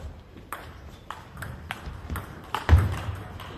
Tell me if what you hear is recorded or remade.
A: remade